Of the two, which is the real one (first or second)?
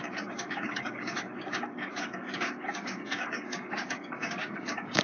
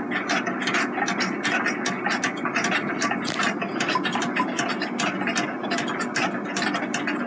second